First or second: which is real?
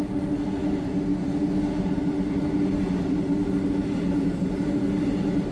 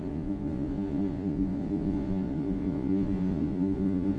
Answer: first